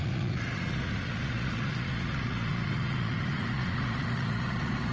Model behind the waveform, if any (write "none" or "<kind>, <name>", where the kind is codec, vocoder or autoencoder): vocoder, Vocos